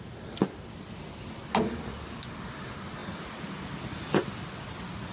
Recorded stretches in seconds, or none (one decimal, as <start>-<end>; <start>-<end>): 0.0-5.1